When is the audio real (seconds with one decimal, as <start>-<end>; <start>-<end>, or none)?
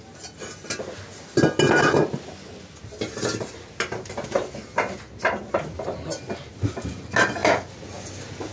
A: 0.0-8.5